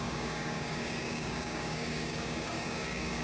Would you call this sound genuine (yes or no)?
no